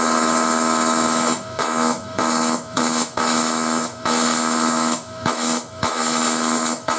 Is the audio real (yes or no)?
no